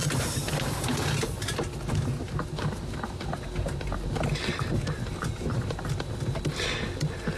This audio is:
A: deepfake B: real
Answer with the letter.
B